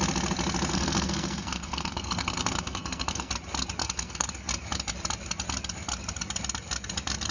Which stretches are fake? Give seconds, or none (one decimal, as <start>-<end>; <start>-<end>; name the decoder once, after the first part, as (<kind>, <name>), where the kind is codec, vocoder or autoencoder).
0.7-3.3 (codec, SNAC); 3.8-4.3